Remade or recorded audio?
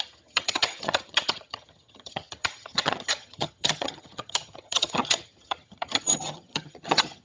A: remade